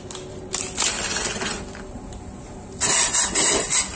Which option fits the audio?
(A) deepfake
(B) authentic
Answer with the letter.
B